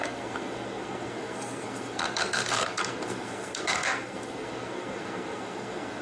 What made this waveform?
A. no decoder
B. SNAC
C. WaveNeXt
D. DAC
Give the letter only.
B